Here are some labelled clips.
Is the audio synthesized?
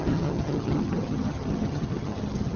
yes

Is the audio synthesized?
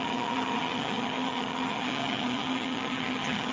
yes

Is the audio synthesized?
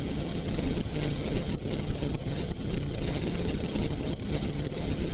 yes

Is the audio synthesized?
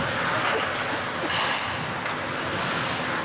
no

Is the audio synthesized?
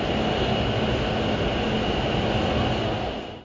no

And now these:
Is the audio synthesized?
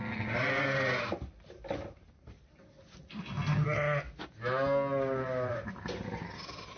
no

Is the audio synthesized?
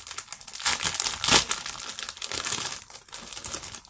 no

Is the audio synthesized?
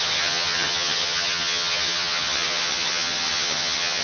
yes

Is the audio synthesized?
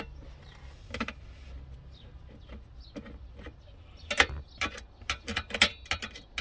no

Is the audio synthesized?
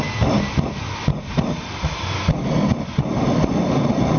no